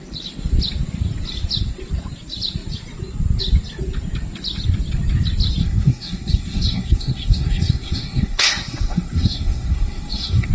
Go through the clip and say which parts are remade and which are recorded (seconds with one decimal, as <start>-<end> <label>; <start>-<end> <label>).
0.0-5.6 recorded; 5.6-10.5 remade